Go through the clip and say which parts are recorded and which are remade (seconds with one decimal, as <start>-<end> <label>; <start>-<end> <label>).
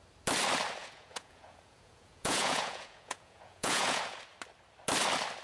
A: 0.0-0.8 recorded; 0.8-4.0 remade; 4.0-5.4 recorded